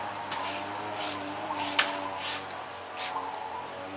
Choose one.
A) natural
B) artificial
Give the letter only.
A